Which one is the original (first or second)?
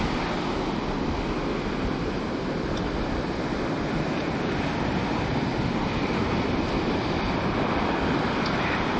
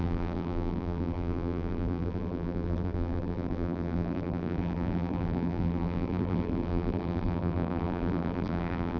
first